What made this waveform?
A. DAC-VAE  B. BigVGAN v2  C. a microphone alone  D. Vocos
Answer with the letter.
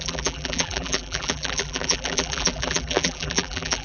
B